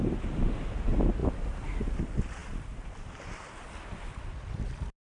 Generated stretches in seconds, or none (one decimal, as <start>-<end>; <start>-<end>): none